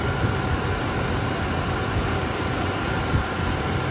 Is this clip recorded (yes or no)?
no